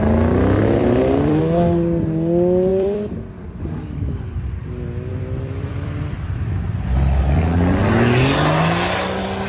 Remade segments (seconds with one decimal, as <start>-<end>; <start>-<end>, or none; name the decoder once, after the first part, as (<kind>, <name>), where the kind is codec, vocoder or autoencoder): 0.8-1.4 (vocoder, BigVGAN v2); 2.7-4.2; 5.1-7.4